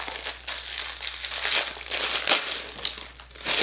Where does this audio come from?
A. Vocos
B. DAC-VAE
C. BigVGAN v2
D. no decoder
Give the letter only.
D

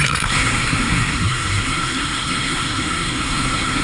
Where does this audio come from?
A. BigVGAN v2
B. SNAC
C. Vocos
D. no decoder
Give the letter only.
B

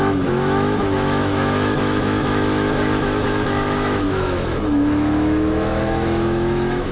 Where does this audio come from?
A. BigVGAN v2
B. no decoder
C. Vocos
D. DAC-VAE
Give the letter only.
D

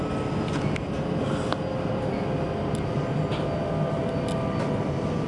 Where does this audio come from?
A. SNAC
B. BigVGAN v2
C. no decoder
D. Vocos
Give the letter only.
C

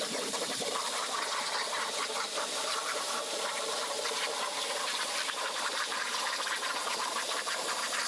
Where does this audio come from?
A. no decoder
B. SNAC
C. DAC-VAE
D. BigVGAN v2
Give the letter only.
D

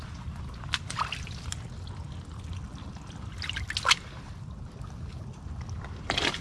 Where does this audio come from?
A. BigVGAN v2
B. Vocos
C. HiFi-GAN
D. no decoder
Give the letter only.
D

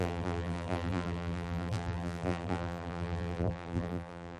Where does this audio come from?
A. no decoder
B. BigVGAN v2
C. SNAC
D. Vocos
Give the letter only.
B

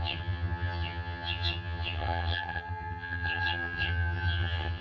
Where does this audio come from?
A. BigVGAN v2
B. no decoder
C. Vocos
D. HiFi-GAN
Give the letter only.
D